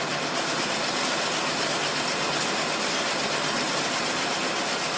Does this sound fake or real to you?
real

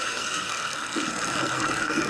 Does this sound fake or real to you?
fake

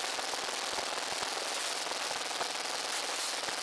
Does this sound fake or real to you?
real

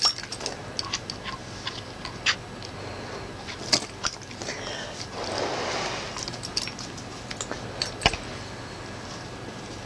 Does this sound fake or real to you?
real